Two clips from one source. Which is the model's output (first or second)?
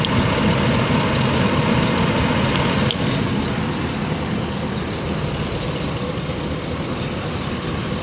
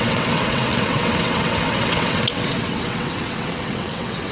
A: second